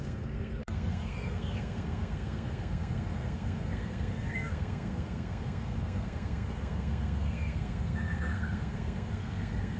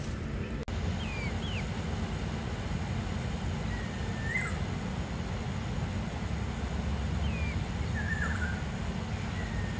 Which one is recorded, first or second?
second